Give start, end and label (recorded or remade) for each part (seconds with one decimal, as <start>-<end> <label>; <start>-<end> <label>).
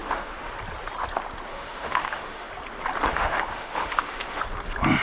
0.0-0.5 remade; 0.5-1.5 recorded; 1.5-2.5 remade; 2.5-3.1 recorded; 3.1-4.4 remade; 4.4-5.0 recorded